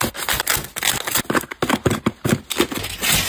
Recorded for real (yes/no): yes